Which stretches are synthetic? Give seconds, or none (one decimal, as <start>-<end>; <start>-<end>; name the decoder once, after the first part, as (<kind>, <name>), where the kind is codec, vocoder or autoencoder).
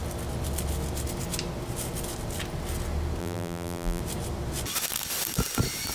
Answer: 3.2-4.0 (vocoder, BigVGAN v2)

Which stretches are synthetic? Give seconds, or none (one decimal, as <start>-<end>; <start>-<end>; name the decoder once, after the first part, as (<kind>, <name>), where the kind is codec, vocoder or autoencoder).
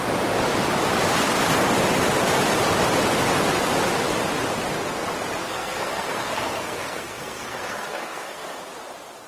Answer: 5.4-8.6 (codec, SNAC)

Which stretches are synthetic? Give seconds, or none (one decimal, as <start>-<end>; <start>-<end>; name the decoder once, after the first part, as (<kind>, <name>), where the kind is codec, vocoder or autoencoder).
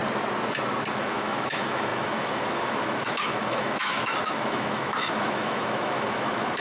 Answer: 1.0-6.6 (autoencoder, DAC-VAE)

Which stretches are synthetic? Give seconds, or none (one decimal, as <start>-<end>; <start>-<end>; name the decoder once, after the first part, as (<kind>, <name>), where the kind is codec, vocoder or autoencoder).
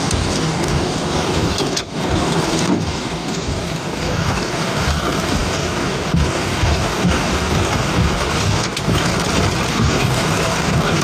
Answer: 0.0-9.1 (codec, DAC); 9.7-11.0